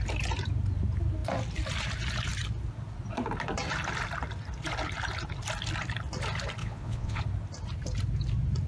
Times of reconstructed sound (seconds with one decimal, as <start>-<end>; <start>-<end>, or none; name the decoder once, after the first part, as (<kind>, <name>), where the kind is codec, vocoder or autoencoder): 6.6-7.2 (vocoder, Vocos)